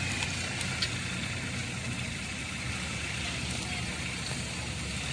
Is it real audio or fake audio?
real